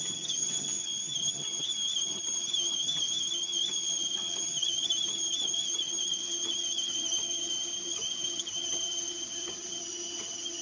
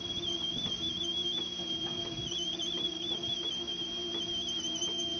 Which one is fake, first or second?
first